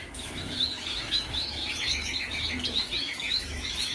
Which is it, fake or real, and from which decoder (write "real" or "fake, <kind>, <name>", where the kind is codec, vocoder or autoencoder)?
fake, autoencoder, DAC-VAE